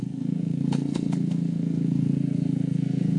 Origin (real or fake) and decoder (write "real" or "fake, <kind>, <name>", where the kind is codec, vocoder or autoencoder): fake, codec, SNAC